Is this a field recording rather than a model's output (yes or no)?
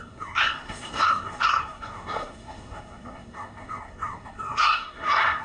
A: no